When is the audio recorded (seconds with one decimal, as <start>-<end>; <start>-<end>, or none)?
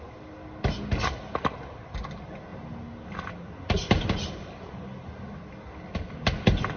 0.0-6.8